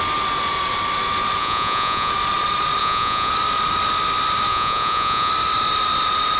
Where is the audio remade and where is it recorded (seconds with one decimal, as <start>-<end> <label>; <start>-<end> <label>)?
0.0-1.4 recorded; 1.4-2.1 remade; 2.1-2.8 recorded; 2.8-3.3 remade; 3.3-4.5 recorded; 4.5-5.3 remade; 5.3-6.4 recorded